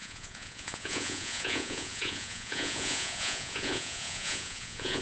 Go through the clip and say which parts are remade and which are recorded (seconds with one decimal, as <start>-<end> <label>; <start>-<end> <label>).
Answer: 0.0-5.0 remade